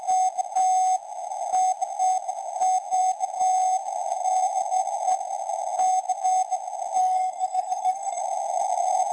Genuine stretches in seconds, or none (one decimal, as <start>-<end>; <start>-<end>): 0.0-7.0; 8.2-9.1